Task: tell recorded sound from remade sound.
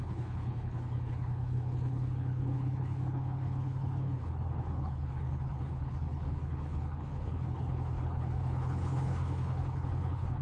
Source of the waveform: remade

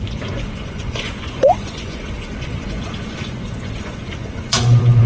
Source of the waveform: remade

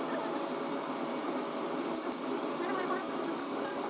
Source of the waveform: recorded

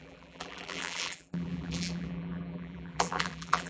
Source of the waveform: remade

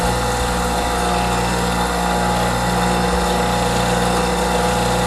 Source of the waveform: recorded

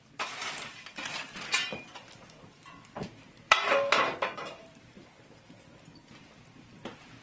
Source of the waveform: remade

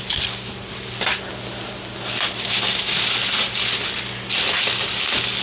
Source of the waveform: recorded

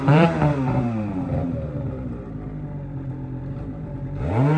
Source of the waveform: remade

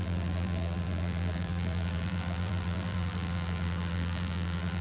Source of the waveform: remade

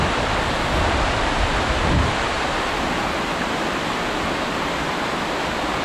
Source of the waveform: recorded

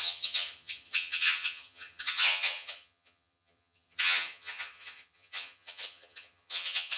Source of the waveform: remade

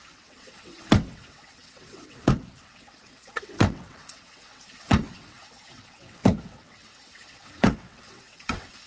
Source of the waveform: remade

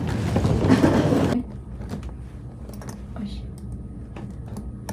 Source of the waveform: recorded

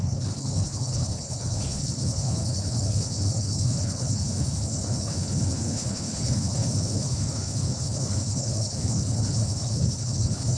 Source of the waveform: remade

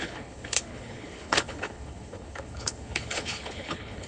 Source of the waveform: remade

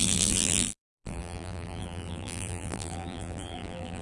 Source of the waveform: remade